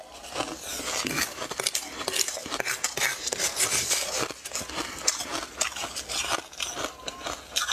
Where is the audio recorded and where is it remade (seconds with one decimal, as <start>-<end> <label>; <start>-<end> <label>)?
0.0-7.7 recorded